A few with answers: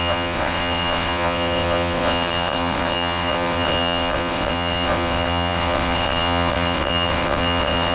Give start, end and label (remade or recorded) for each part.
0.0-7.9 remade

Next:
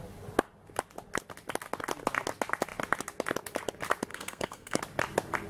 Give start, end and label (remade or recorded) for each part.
0.0-4.1 recorded; 4.1-4.8 remade; 4.8-5.5 recorded

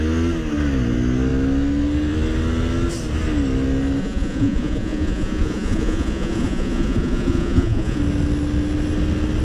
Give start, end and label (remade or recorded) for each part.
0.0-4.0 recorded; 4.0-8.0 remade; 8.0-9.4 recorded

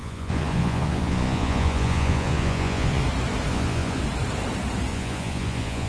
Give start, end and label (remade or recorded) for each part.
0.0-3.0 remade; 3.0-3.5 recorded; 3.5-4.0 remade; 4.0-4.9 recorded; 4.9-5.9 remade

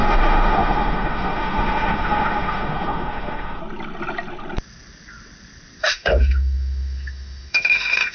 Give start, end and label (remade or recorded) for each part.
0.0-3.6 remade; 3.6-5.8 recorded; 5.8-8.1 remade

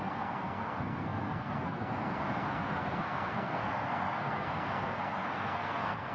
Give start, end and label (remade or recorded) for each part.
0.0-6.1 remade

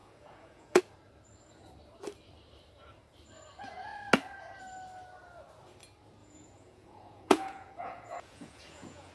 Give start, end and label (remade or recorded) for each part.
0.0-0.8 remade; 0.8-6.2 recorded; 6.2-9.1 remade

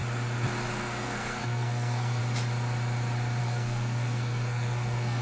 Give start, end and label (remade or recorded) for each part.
0.0-0.7 recorded; 0.7-2.2 remade; 2.2-3.4 recorded; 3.4-5.2 remade